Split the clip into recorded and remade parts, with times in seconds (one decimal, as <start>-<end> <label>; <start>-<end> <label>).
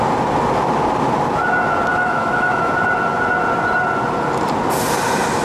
0.0-1.9 recorded; 1.9-2.7 remade; 2.7-5.4 recorded